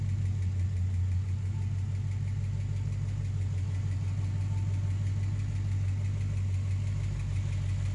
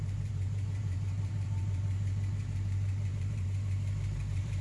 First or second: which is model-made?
second